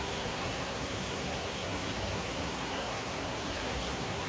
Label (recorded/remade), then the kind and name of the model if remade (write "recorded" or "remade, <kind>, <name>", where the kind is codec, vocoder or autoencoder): remade, codec, SNAC